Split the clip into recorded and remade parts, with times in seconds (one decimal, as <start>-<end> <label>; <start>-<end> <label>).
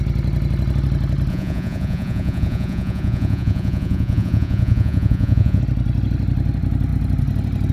0.0-1.3 recorded; 1.3-5.6 remade; 5.6-7.7 recorded